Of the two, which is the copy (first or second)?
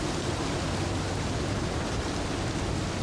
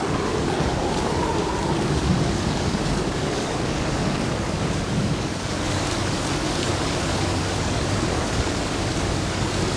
second